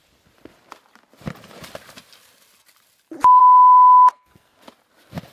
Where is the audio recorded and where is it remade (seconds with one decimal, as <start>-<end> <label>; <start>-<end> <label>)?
0.0-3.4 recorded; 3.4-4.6 remade; 4.6-5.3 recorded